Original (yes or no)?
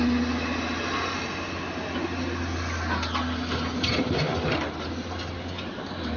yes